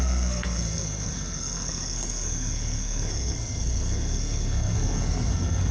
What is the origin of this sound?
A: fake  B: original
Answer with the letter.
A